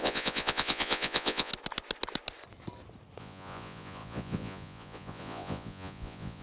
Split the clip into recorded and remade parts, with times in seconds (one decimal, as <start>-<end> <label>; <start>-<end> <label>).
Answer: 0.0-1.5 remade; 1.5-3.2 recorded; 3.2-6.4 remade